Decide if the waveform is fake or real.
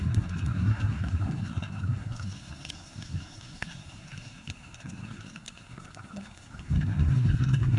fake